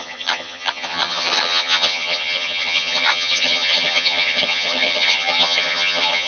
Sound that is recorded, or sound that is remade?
remade